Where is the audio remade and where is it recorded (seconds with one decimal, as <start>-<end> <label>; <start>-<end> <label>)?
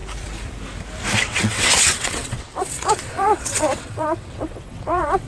0.0-1.2 recorded; 1.2-5.3 remade